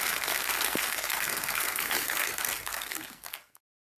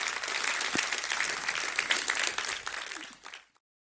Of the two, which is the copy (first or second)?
first